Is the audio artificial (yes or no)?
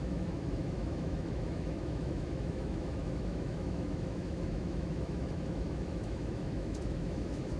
yes